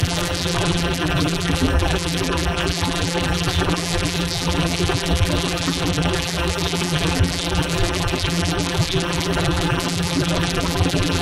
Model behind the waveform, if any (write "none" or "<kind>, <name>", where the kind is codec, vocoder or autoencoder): vocoder, BigVGAN v2